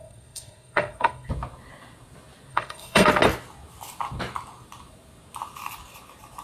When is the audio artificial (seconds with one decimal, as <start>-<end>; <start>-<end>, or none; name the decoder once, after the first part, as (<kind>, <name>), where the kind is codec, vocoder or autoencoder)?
0.0-1.3 (codec, SNAC); 2.5-3.1